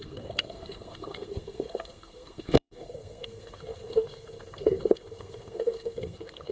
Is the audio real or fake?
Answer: fake